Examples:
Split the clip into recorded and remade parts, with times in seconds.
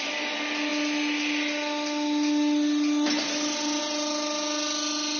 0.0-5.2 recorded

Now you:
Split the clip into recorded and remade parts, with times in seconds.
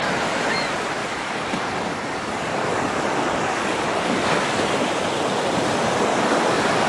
0.0-1.0 recorded; 1.0-4.7 remade; 4.7-6.1 recorded; 6.1-6.9 remade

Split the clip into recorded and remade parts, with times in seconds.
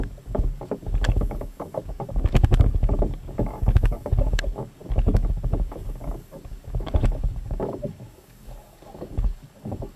0.0-10.0 remade